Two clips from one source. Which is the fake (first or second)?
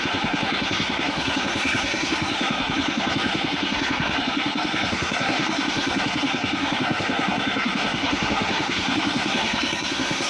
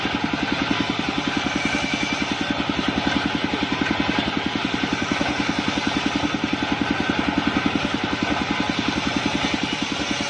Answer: first